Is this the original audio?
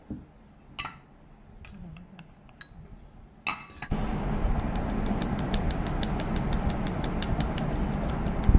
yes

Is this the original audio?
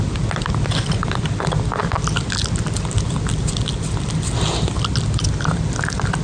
yes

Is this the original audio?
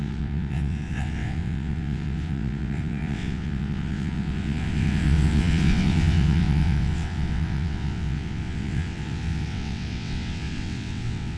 no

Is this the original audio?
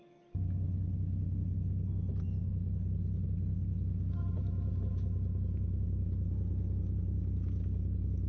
yes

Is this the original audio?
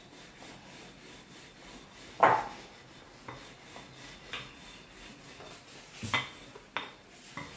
yes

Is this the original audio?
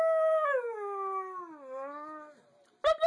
yes